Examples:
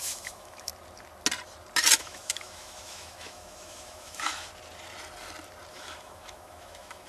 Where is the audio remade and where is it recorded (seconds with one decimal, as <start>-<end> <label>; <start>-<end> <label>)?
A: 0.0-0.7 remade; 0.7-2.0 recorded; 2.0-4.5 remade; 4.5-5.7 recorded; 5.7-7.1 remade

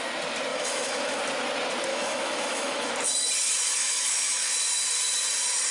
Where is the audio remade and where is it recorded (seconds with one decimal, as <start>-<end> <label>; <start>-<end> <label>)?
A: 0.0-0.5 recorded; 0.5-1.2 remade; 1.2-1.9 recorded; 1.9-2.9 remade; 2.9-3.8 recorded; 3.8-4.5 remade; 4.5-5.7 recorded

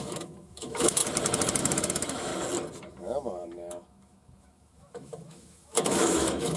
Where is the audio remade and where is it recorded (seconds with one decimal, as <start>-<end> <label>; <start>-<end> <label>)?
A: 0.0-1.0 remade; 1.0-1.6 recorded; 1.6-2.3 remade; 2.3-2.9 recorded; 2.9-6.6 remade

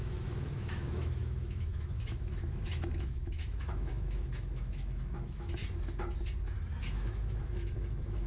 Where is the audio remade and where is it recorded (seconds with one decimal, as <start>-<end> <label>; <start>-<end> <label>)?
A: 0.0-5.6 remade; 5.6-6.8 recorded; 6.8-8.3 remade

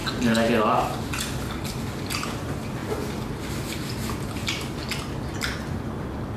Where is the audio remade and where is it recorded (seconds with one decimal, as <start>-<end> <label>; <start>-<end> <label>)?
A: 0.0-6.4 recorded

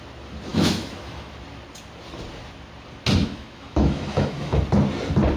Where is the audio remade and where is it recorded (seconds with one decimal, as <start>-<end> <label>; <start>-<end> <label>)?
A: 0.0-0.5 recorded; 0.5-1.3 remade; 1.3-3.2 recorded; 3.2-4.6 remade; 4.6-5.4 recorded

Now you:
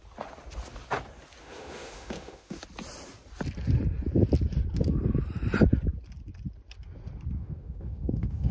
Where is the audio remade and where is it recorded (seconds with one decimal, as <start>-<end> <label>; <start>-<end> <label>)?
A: 0.0-1.4 recorded; 1.4-2.6 remade; 2.6-7.4 recorded; 7.4-8.5 remade

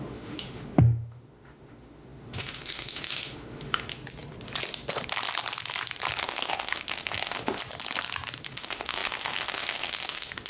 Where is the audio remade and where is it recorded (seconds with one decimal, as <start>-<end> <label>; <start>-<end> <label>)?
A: 0.0-4.0 remade; 4.0-6.2 recorded; 6.2-7.6 remade; 7.6-8.4 recorded; 8.4-10.5 remade